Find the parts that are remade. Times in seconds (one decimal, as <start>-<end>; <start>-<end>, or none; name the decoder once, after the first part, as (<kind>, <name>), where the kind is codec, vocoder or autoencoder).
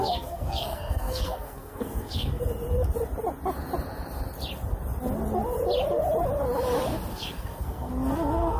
0.0-2.4 (codec, SNAC); 7.1-7.9